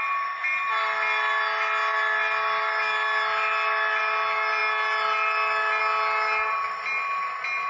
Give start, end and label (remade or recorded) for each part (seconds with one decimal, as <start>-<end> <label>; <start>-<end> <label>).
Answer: 0.0-7.7 recorded